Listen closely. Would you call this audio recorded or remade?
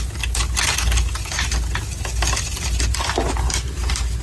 recorded